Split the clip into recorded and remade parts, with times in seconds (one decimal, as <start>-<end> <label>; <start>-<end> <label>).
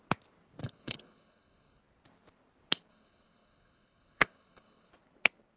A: 0.0-0.6 recorded; 0.6-1.8 remade; 1.8-2.9 recorded; 2.9-4.9 remade; 4.9-5.6 recorded